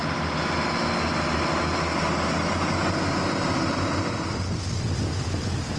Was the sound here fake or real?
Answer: real